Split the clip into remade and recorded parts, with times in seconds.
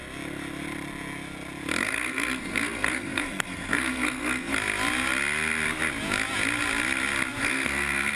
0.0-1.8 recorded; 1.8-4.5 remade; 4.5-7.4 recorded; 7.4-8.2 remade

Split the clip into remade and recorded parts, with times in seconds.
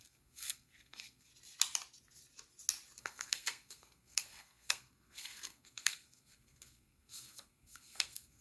0.0-1.3 remade; 1.3-3.0 recorded; 3.0-8.4 remade